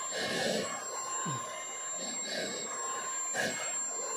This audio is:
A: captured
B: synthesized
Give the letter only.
A